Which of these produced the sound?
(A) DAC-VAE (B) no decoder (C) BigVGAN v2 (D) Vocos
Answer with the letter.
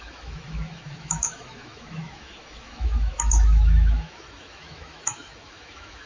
A